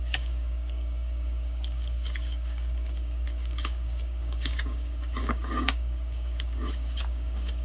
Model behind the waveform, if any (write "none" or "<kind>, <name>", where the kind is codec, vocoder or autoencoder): codec, DAC